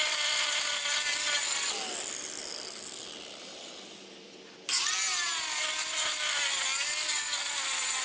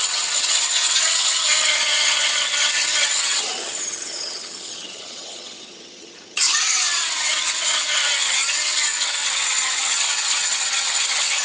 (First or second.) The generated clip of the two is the second